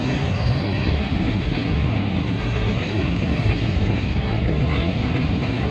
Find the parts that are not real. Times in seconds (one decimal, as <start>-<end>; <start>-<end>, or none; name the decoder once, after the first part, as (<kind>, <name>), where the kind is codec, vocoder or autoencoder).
0.0-5.7 (codec, SNAC)